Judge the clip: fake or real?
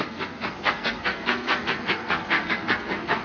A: fake